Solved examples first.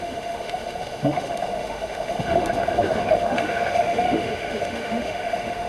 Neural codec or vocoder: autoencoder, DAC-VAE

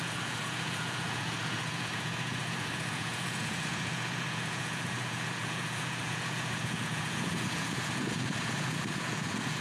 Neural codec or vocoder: vocoder, Vocos